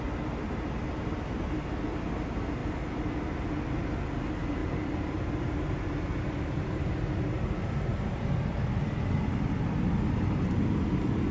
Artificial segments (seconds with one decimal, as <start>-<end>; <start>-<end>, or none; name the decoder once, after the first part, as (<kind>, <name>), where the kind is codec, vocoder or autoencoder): 4.6-5.5 (vocoder, BigVGAN v2)